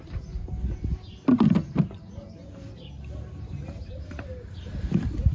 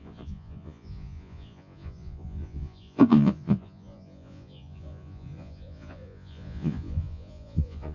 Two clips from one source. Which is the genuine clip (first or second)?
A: first